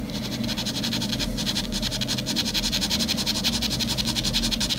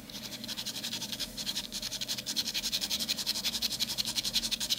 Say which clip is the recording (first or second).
first